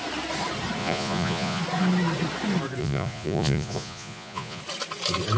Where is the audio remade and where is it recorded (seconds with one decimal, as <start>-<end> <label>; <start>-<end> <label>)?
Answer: 0.0-0.8 recorded; 0.8-1.6 remade; 1.6-2.8 recorded; 2.8-4.6 remade; 4.6-5.4 recorded